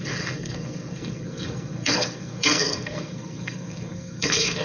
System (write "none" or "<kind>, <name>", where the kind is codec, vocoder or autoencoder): codec, SNAC